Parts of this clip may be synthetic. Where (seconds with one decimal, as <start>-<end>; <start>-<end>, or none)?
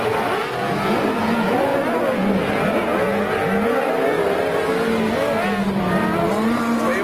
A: none